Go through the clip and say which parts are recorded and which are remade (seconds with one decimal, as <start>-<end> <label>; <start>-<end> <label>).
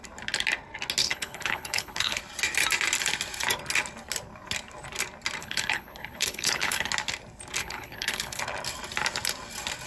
0.0-1.0 recorded; 1.0-2.2 remade; 2.2-5.4 recorded; 5.4-6.9 remade; 6.9-7.6 recorded; 7.6-8.4 remade; 8.4-9.9 recorded